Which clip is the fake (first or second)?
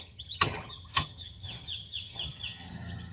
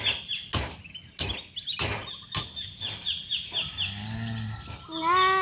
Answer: first